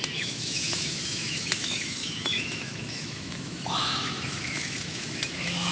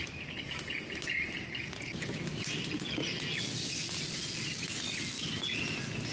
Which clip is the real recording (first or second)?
second